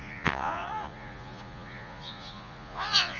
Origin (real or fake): fake